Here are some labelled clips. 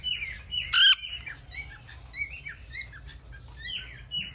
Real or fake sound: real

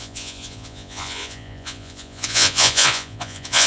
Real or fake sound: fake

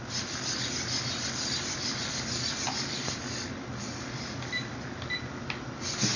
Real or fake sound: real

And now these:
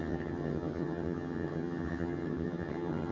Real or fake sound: fake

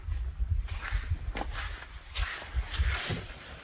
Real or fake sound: real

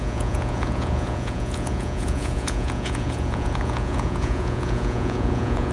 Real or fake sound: fake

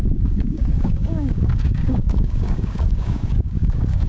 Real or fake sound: fake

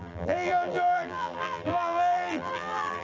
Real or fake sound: fake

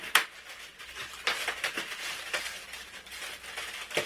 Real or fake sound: real